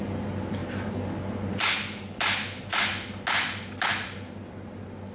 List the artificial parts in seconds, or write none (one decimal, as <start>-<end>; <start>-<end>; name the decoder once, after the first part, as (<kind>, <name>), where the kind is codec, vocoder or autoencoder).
none